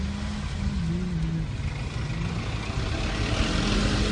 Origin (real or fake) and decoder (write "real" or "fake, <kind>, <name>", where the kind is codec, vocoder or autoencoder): real